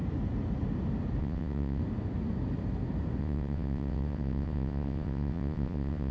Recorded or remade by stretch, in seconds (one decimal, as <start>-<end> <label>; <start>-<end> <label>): 0.0-1.2 recorded; 1.2-1.8 remade; 1.8-3.2 recorded; 3.2-6.1 remade